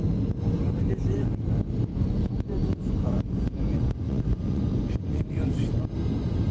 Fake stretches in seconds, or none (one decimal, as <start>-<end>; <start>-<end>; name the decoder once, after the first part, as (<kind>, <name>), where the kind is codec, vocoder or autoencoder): 1.9-5.8 (vocoder, Vocos)